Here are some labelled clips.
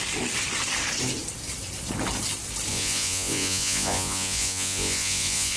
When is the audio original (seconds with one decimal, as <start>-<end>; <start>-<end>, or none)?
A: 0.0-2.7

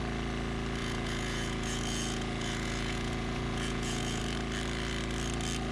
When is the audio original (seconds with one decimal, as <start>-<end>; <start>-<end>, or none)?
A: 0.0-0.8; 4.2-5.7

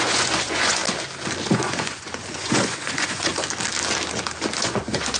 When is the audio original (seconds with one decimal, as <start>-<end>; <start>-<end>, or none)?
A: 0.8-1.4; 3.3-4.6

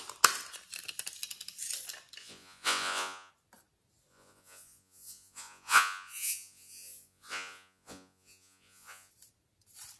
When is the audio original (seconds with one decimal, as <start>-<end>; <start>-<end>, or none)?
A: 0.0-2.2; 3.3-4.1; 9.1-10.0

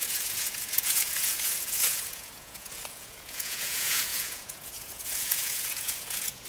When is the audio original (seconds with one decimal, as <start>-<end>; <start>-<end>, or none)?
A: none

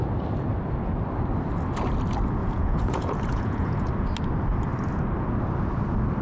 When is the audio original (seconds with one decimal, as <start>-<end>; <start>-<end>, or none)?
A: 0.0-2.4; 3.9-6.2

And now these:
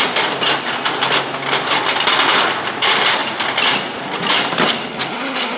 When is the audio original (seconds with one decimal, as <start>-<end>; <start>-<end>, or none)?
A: 0.0-5.6